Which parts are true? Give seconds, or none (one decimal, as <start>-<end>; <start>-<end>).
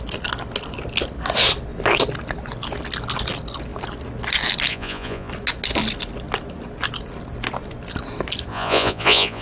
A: 0.0-4.7; 5.3-8.5